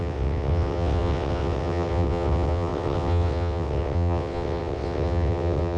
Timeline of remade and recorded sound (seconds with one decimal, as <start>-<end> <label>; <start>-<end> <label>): 0.0-5.8 remade